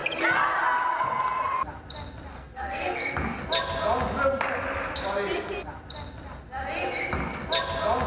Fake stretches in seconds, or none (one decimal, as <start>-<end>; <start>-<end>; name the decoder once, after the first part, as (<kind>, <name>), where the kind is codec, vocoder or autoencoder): 2.3-3.4 (codec, SNAC)